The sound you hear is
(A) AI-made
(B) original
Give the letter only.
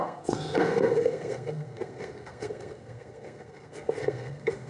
A